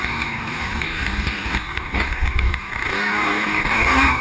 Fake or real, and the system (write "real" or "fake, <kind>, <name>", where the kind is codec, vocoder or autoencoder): fake, codec, DAC